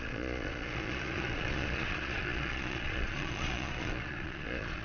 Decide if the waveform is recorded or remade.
remade